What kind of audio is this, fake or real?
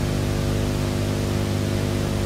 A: real